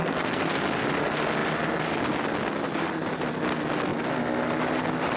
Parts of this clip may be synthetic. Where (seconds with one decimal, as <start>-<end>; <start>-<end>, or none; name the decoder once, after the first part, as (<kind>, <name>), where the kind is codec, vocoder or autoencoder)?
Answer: 0.0-0.6 (codec, SNAC)